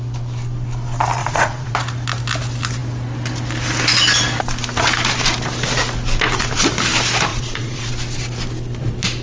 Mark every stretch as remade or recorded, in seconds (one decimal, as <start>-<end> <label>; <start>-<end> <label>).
0.0-1.2 recorded; 1.2-1.7 remade; 1.7-7.3 recorded; 7.3-7.9 remade; 7.9-9.2 recorded